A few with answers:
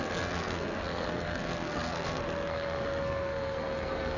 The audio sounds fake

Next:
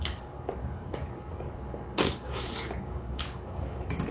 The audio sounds fake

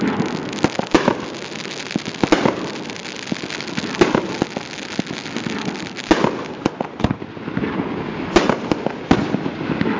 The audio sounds real